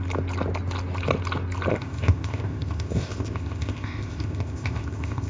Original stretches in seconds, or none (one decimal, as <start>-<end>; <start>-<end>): 0.0-1.7